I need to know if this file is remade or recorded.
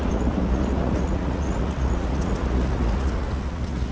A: remade